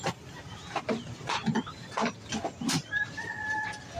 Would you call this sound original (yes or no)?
yes